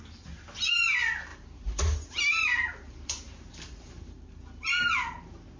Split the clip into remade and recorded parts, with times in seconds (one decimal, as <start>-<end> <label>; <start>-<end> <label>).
0.0-1.3 recorded; 1.3-4.7 remade; 4.7-5.6 recorded